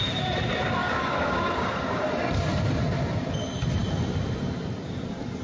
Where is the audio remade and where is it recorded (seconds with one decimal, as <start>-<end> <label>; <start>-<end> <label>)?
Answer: 0.0-0.8 recorded; 0.8-2.0 remade; 2.0-5.4 recorded